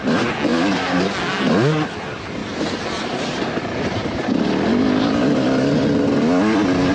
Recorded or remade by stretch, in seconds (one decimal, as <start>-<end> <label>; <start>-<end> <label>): 0.0-0.5 recorded; 0.5-1.1 remade; 1.1-2.4 recorded; 2.4-4.2 remade; 4.2-6.9 recorded